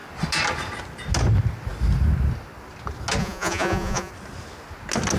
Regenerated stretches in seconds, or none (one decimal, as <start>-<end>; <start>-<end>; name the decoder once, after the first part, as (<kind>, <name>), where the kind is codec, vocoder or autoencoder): 3.2-4.1 (vocoder, Vocos)